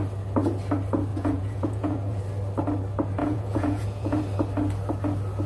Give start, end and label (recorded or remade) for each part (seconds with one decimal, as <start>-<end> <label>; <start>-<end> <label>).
0.0-1.1 recorded; 1.1-2.2 remade; 2.2-3.2 recorded; 3.2-4.2 remade; 4.2-5.5 recorded